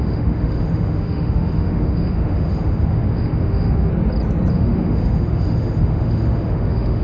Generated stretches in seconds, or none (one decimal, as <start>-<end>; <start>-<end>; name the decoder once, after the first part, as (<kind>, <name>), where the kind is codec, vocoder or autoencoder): 0.0-3.9 (autoencoder, DAC-VAE); 4.5-7.0